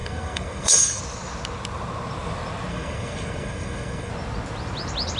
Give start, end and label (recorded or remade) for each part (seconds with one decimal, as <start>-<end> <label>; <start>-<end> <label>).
0.0-1.0 remade; 1.0-2.7 recorded; 2.7-4.1 remade; 4.1-5.2 recorded